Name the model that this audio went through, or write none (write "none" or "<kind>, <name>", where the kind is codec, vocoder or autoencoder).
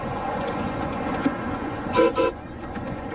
vocoder, Vocos